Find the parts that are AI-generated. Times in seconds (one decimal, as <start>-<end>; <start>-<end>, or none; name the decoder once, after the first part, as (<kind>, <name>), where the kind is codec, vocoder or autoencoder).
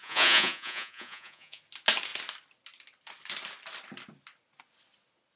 0.0-1.6 (vocoder, Vocos)